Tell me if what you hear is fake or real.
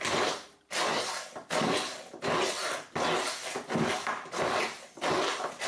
real